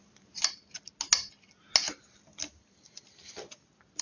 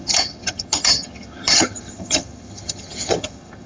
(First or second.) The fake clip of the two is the second